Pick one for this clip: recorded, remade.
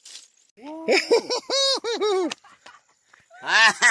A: recorded